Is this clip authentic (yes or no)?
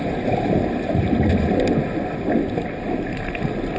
yes